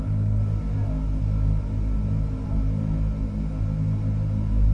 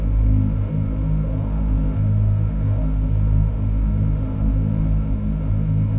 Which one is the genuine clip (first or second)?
first